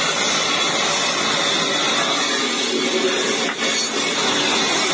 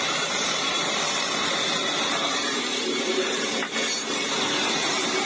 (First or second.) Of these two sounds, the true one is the first